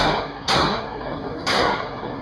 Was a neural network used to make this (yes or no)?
yes